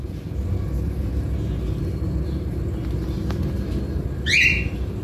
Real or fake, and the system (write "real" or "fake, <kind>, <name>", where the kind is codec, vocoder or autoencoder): real